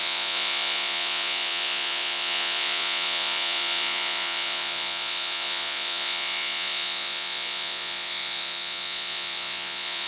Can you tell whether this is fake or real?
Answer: fake